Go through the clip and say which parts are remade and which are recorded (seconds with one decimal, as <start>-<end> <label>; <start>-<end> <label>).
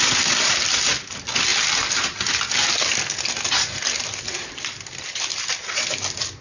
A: 0.0-6.4 recorded